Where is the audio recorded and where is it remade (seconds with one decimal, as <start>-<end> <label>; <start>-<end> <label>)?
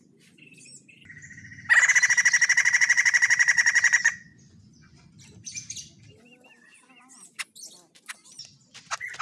0.0-2.6 recorded; 2.6-5.1 remade; 5.1-9.2 recorded